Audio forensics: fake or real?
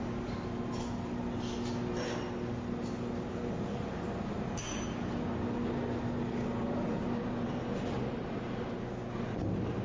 real